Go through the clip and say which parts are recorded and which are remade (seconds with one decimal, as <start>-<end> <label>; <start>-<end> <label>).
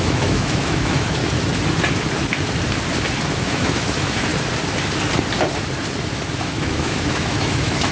0.0-1.2 remade; 1.2-3.3 recorded; 3.3-4.3 remade; 4.3-6.4 recorded; 6.4-7.9 remade